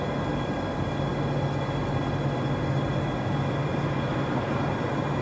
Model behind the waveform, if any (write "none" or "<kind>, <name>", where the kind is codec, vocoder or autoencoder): none